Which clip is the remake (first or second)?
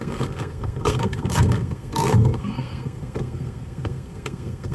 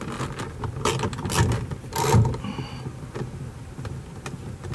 first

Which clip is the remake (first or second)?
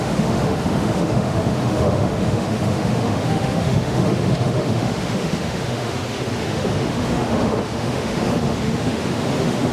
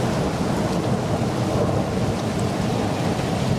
first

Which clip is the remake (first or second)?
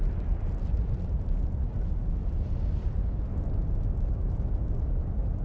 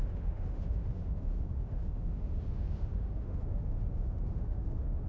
second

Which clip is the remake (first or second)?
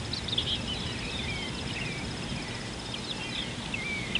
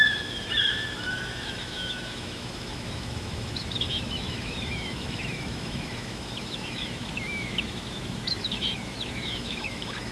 second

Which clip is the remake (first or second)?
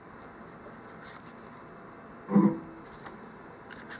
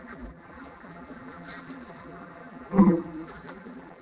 second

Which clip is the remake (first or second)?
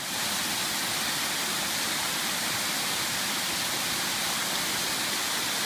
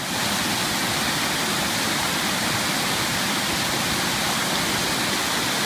first